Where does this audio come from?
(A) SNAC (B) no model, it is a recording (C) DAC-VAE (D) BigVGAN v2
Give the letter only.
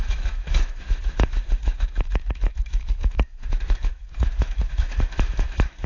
C